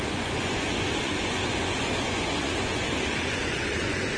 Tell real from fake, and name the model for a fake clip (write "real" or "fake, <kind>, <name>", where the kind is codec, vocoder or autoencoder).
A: fake, vocoder, Vocos